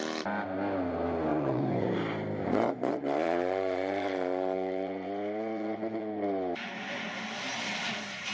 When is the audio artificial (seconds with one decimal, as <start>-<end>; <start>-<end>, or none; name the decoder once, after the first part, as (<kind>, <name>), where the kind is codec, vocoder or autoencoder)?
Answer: 1.3-2.0 (vocoder, Vocos); 2.4-7.1